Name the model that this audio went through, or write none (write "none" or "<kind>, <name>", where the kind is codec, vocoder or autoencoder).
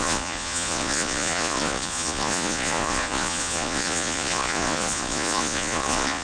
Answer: vocoder, Vocos